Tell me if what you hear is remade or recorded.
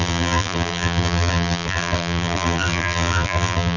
remade